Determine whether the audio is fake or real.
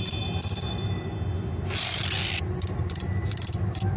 real